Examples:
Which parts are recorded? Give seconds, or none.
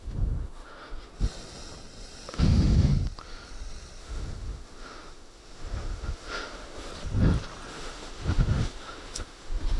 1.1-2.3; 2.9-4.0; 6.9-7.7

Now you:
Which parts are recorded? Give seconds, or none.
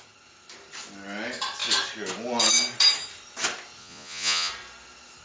0.0-3.8; 4.5-5.2